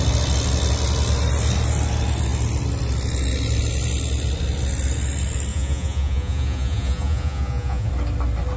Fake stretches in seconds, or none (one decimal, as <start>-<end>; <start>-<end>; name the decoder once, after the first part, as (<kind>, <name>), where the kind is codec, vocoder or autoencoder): 5.5-7.9 (vocoder, Vocos)